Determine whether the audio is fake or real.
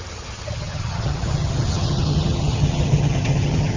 fake